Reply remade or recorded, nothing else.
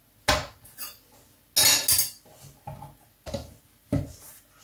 recorded